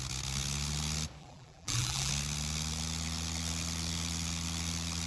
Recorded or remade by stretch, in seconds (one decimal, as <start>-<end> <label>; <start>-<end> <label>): 0.0-1.2 recorded; 1.2-2.1 remade; 2.1-5.1 recorded